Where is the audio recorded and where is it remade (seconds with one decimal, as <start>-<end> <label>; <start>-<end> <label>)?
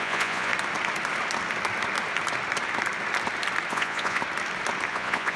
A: 0.0-0.5 remade; 0.5-3.7 recorded; 3.7-4.2 remade; 4.2-4.9 recorded; 4.9-5.4 remade